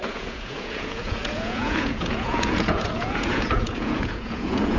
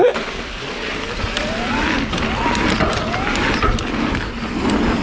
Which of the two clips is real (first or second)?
second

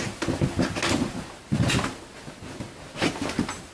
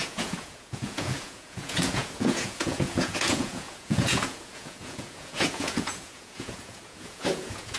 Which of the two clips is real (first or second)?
first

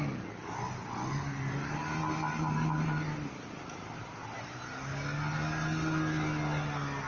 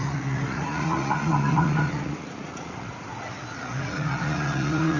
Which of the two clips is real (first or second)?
first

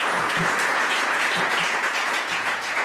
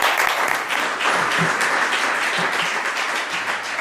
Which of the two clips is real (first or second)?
second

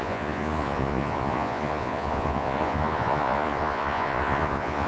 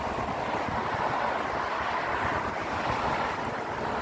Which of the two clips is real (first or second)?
second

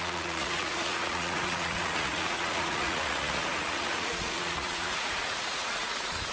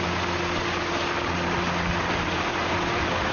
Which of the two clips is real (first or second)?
second